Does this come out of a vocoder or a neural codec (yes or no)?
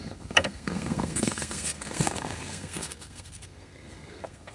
yes